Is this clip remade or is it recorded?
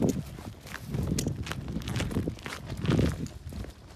recorded